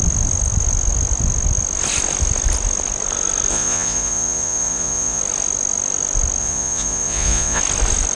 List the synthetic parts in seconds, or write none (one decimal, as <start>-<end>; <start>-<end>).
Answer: 3.5-5.2; 6.4-7.6